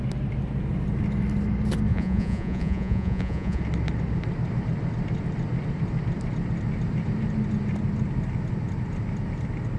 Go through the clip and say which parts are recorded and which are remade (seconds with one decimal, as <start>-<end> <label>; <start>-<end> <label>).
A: 0.0-1.9 recorded; 1.9-3.6 remade; 3.6-9.8 recorded